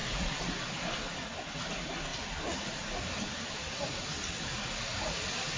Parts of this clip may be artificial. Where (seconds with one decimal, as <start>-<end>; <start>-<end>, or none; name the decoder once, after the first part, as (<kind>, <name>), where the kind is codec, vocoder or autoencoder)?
none